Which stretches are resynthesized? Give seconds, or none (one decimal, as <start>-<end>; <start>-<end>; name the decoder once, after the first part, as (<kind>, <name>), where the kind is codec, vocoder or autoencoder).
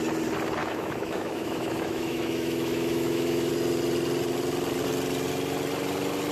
0.6-3.5 (autoencoder, DAC-VAE)